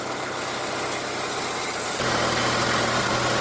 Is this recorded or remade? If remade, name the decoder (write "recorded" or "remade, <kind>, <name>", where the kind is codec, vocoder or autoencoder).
recorded